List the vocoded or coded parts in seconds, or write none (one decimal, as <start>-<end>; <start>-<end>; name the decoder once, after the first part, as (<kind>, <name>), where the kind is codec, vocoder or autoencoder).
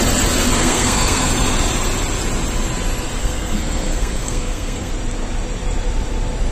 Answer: 0.6-1.3 (codec, SNAC); 3.2-4.9